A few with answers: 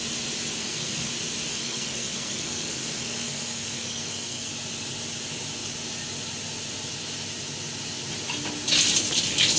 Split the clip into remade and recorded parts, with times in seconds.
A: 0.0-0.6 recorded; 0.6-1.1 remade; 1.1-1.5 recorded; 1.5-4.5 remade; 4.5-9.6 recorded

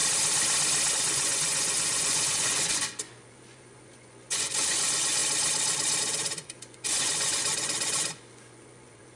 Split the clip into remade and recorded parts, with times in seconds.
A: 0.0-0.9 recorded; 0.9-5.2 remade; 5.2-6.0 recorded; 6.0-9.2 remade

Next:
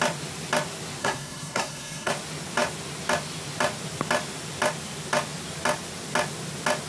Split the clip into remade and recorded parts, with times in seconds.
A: 0.0-1.0 recorded; 1.0-2.1 remade; 2.1-6.9 recorded